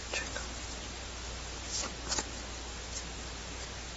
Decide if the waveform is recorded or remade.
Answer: recorded